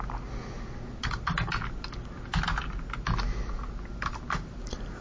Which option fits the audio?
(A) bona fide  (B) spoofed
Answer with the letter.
A